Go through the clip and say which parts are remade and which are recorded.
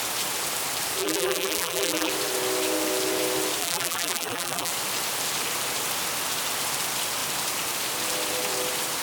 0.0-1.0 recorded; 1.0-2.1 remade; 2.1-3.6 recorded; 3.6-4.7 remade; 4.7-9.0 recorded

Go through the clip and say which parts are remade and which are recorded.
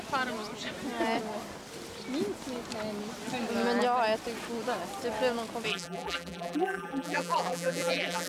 0.0-5.7 recorded; 5.7-8.3 remade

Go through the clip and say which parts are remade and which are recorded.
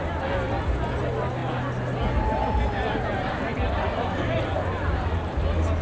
0.0-5.8 recorded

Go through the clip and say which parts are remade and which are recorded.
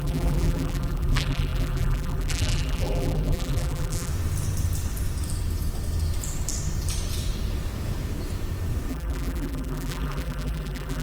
0.0-4.1 remade; 4.1-8.9 recorded; 8.9-11.0 remade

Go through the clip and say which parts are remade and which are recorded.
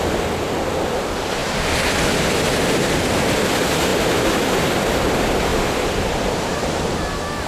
0.0-5.5 recorded; 5.5-6.4 remade; 6.4-7.5 recorded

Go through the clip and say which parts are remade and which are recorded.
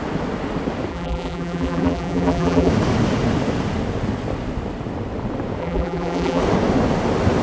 0.0-0.9 recorded; 0.9-2.7 remade; 2.7-5.6 recorded; 5.6-6.4 remade; 6.4-7.4 recorded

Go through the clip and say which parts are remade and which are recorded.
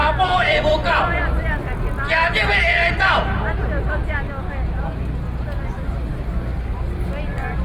0.0-0.7 remade; 0.7-7.6 recorded